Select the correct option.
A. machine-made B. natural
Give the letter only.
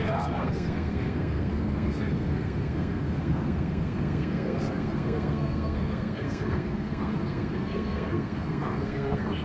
A